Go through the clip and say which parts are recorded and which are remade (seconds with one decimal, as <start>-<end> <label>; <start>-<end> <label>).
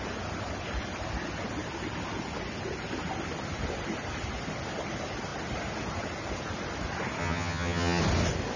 0.0-7.2 recorded; 7.2-8.0 remade; 8.0-8.6 recorded